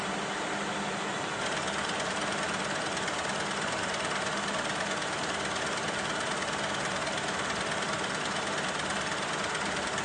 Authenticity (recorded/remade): recorded